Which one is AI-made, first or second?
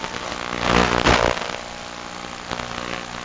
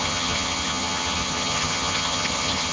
second